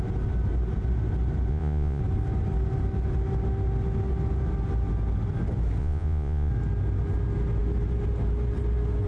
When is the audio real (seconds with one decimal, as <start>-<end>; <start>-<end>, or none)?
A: 0.0-1.5; 2.0-5.8; 6.5-9.1